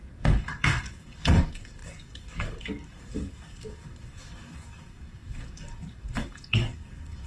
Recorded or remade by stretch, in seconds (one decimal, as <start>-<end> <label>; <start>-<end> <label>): 0.0-7.3 remade